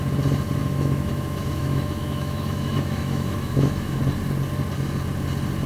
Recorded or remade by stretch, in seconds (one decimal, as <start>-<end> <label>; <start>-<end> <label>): 0.0-0.6 recorded; 0.6-4.0 remade; 4.0-5.7 recorded